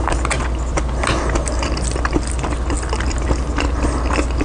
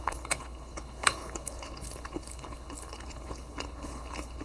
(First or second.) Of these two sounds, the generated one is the second